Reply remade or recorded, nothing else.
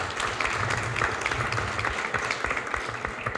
recorded